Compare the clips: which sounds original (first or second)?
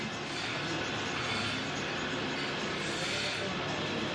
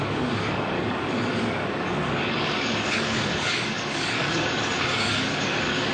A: first